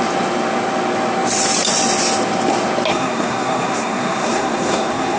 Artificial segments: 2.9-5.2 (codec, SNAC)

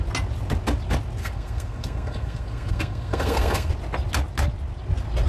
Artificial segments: 1.2-3.7 (codec, SNAC)

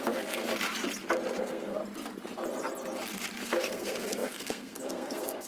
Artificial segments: 0.0-0.5 (codec, SNAC); 1.4-1.8; 3.4-5.5

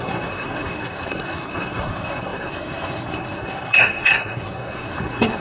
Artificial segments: 0.0-5.4 (codec, SNAC)

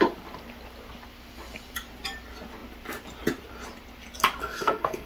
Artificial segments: 4.4-5.1 (codec, SNAC)

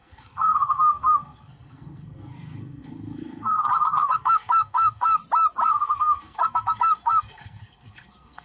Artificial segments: 0.0-5.2 (codec, SNAC); 5.7-8.4